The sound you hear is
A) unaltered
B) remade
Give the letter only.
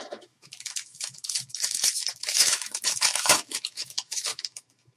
B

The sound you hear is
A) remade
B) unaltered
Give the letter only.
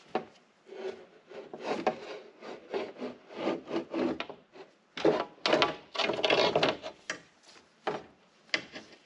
B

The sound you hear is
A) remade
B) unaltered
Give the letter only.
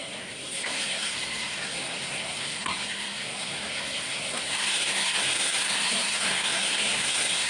A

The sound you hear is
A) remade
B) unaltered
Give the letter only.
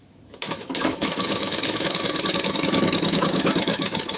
A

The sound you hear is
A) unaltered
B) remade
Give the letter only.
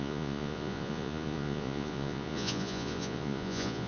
B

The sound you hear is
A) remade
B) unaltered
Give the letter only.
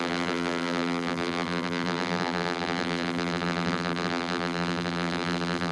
A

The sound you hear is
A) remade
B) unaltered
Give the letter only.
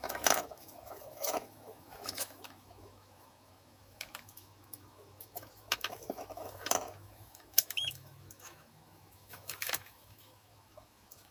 A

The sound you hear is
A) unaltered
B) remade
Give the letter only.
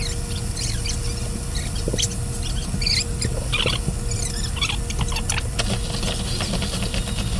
A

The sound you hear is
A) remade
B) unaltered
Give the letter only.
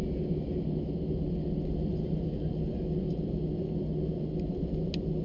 B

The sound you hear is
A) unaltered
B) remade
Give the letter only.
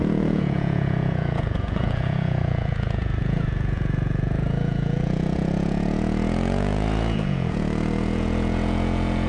B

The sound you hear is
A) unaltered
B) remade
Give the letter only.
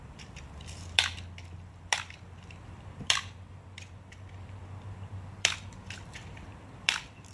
B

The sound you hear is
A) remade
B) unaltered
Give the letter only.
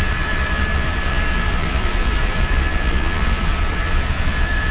A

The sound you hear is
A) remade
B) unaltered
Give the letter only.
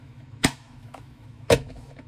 A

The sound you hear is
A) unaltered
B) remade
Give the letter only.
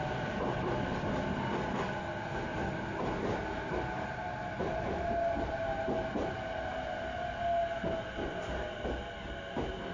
A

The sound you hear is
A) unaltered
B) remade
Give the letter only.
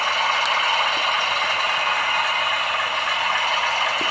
A